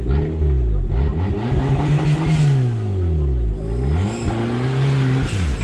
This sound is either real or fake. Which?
real